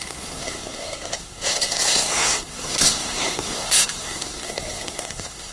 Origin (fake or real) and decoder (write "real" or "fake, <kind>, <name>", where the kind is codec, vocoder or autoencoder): fake, codec, SNAC